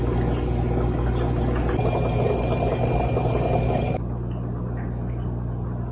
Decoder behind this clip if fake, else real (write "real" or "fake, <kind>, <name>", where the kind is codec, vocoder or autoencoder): real